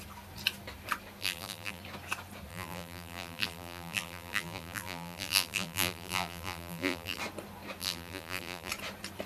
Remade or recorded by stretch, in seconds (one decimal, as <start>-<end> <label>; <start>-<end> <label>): 0.0-1.2 recorded; 1.2-1.8 remade; 1.8-2.5 recorded; 2.5-7.2 remade; 7.2-7.8 recorded; 7.8-8.7 remade; 8.7-9.3 recorded